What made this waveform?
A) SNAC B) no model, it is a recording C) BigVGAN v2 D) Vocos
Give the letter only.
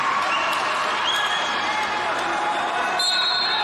B